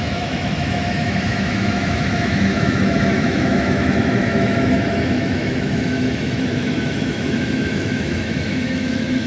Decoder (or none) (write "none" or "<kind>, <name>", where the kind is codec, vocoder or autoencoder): autoencoder, DAC-VAE